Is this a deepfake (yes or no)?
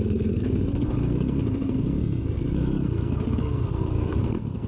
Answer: yes